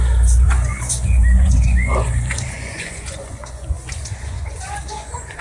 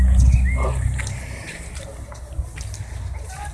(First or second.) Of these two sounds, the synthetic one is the first